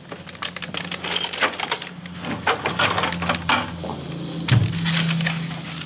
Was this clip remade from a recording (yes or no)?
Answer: no